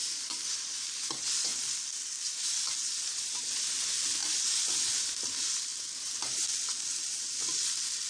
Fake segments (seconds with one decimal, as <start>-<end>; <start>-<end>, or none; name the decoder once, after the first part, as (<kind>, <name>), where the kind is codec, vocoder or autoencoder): 0.7-1.5 (vocoder, BigVGAN v2); 3.0-5.7; 7.1-8.1

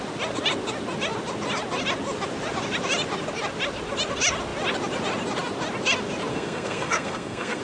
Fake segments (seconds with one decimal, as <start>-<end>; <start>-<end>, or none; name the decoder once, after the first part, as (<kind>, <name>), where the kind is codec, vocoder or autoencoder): 6.3-7.6 (codec, SNAC)

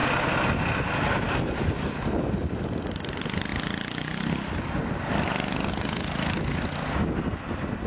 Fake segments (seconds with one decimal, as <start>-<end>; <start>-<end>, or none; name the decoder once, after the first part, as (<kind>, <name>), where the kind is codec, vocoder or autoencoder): none

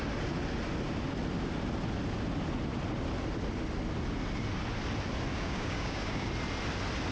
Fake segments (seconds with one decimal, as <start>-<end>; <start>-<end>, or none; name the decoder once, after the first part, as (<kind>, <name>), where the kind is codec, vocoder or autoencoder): 5.3-6.3 (codec, DAC)

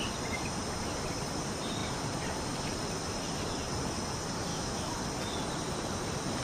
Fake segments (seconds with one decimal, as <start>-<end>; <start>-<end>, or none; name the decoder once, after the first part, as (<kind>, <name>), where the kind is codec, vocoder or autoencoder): 4.5-5.0 (autoencoder, DAC-VAE)